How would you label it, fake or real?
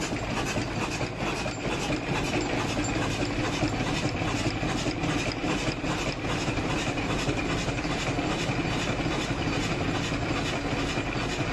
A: real